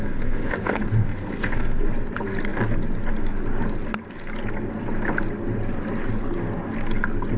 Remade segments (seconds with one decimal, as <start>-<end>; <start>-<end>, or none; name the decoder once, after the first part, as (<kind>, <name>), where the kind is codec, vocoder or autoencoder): 0.0-1.8 (codec, SNAC)